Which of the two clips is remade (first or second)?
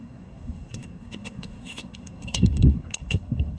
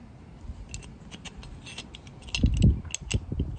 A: first